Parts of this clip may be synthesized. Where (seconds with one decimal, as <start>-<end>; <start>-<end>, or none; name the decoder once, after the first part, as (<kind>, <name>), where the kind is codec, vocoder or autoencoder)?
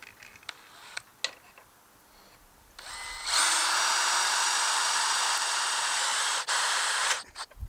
none